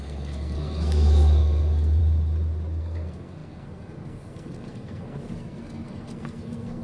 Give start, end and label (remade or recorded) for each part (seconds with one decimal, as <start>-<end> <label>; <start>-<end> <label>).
0.0-2.0 remade; 2.0-2.8 recorded; 2.8-6.8 remade